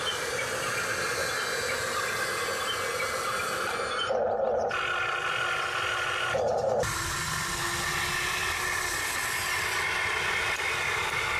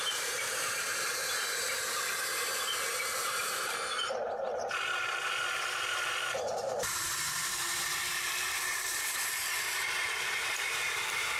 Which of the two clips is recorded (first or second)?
first